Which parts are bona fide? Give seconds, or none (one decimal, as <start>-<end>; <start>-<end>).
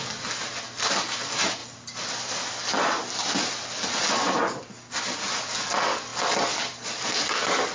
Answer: 0.0-7.7